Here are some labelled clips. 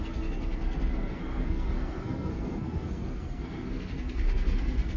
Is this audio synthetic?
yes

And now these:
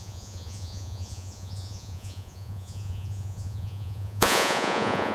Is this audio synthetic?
yes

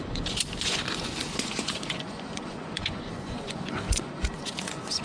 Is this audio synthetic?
yes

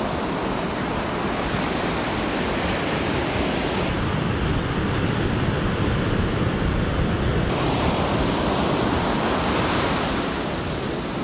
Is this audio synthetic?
no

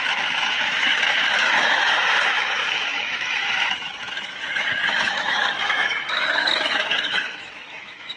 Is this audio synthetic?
yes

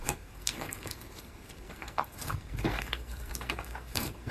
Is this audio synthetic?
yes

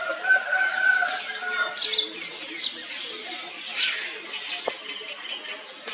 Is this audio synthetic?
no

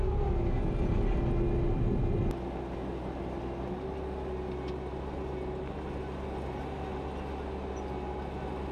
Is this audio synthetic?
no